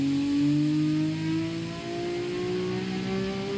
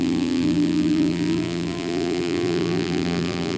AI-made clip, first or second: second